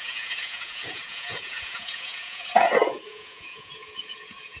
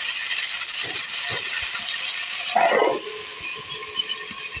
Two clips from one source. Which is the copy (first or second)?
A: first